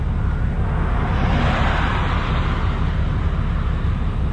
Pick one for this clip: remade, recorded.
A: recorded